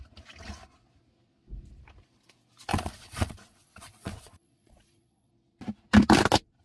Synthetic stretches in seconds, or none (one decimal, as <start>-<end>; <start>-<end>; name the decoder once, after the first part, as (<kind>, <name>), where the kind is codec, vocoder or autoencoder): 2.7-5.3 (vocoder, Vocos)